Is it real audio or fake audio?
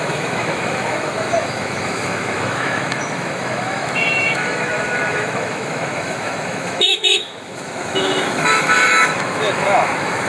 fake